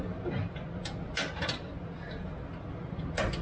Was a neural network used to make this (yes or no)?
no